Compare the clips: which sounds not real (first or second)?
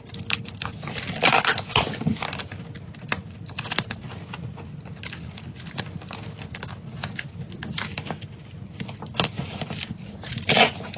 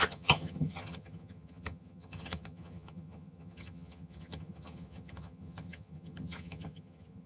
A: second